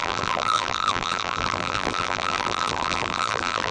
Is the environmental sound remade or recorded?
remade